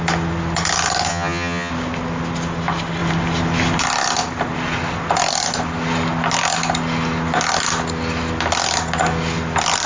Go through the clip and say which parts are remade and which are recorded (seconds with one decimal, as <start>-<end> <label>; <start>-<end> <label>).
0.0-1.1 recorded; 1.1-1.7 remade; 1.7-9.9 recorded